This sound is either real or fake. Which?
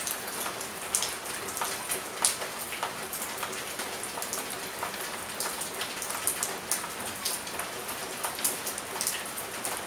real